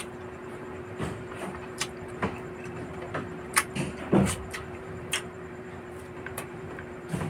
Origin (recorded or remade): remade